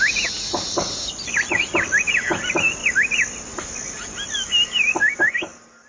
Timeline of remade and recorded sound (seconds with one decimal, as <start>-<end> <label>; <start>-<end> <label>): 0.0-5.9 recorded